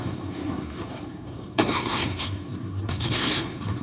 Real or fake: fake